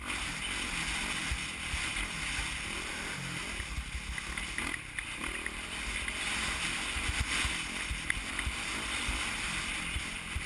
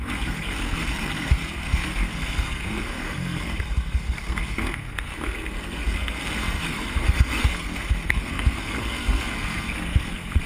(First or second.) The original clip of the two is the first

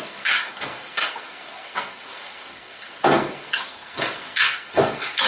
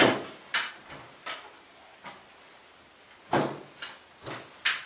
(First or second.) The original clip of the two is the second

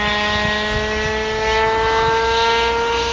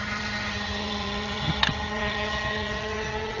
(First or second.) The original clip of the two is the first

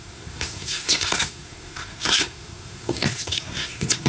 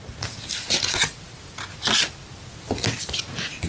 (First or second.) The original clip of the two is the second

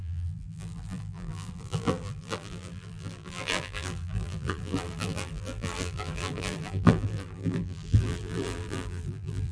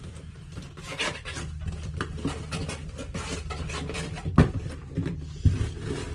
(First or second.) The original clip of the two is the second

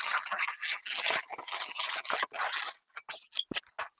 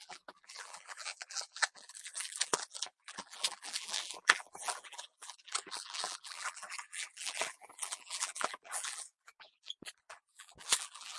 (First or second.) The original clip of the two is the first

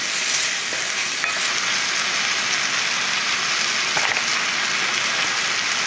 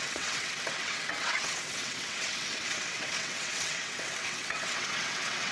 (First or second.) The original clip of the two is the first